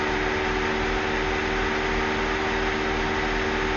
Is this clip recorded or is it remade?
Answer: recorded